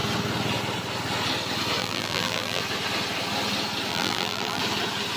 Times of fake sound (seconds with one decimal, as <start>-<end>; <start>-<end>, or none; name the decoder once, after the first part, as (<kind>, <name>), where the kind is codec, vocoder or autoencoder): 1.8-2.6 (vocoder, BigVGAN v2); 3.9-4.6